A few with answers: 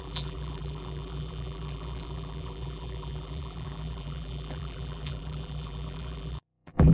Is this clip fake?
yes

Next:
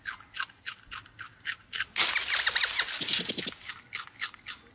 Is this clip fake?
no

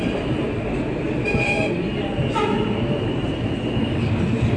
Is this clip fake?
no